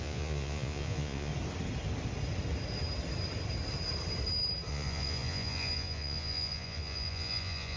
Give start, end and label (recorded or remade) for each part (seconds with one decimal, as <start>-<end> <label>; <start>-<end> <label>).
0.0-1.3 remade; 1.3-4.7 recorded; 4.7-7.8 remade